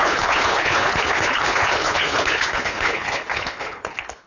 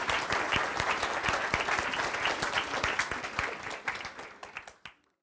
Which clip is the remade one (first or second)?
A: first